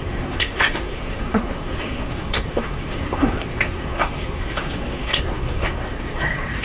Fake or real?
fake